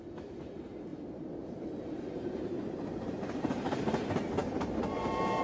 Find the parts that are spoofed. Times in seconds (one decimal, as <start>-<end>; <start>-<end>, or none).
0.0-5.4